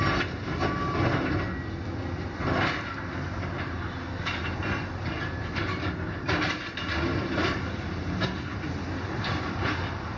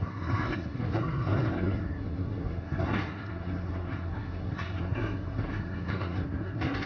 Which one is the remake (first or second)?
second